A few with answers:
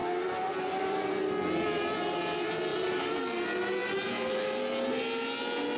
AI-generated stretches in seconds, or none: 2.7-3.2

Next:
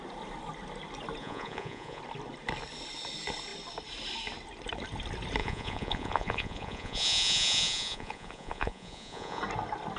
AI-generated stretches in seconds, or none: 1.2-2.0; 5.4-9.4

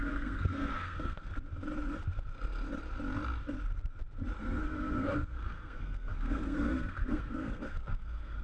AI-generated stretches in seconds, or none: 0.0-1.3; 4.4-8.4

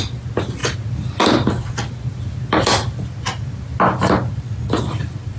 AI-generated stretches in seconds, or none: none